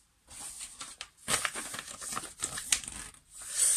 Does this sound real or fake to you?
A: real